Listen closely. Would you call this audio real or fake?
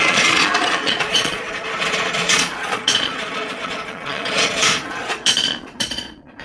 fake